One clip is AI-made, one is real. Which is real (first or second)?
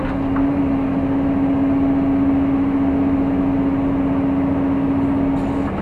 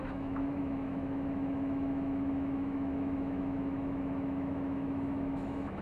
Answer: first